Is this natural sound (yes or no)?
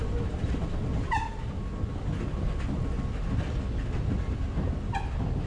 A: yes